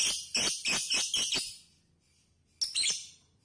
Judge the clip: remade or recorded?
recorded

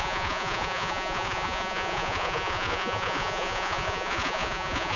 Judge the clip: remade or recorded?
remade